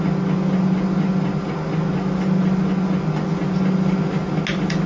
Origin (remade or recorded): recorded